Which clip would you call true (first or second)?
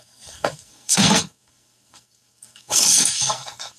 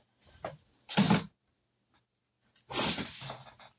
second